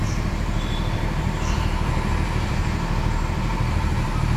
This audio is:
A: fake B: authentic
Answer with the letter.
A